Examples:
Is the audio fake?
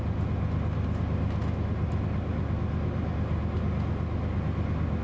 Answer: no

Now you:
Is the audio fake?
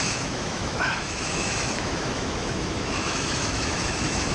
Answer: yes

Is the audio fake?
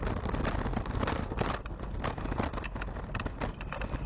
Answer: no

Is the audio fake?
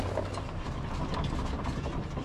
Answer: no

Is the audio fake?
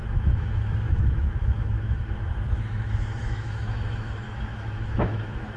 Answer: yes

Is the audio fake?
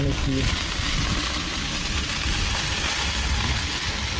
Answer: no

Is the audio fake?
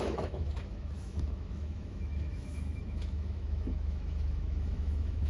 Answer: yes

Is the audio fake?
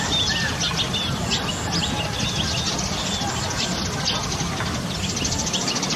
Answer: no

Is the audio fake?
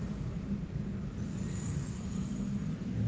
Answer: no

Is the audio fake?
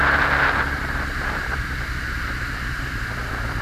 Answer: no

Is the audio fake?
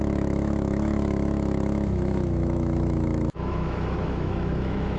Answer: yes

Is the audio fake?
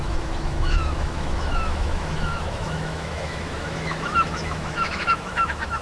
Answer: yes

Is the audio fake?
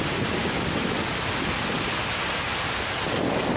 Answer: no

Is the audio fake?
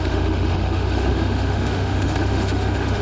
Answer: yes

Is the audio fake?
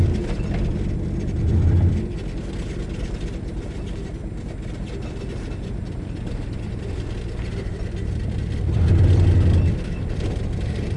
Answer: no